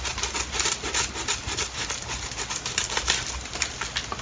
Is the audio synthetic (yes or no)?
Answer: no